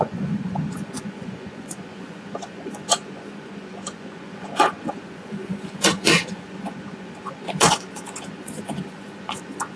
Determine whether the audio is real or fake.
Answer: fake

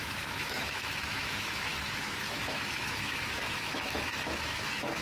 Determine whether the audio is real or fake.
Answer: fake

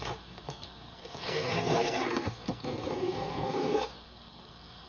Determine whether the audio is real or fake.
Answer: fake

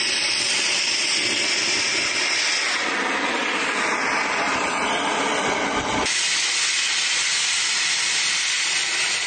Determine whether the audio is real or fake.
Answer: real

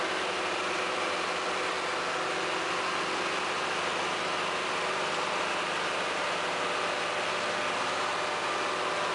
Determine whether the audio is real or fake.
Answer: real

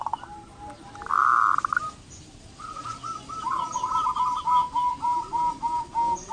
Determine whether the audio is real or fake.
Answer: real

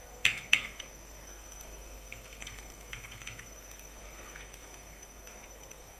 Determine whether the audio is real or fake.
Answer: fake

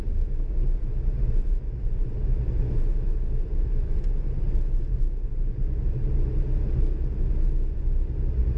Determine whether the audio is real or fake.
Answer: real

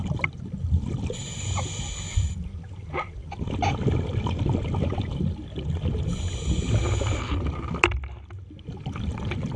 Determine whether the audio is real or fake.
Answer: real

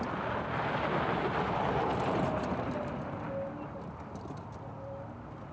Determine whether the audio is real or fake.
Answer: real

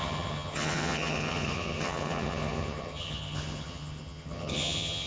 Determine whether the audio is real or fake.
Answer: fake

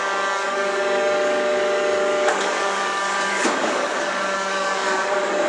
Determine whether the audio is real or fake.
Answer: fake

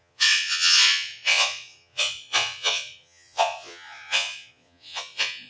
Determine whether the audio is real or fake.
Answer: fake